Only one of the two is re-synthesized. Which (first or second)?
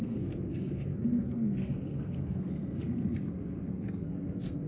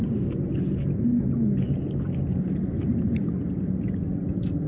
first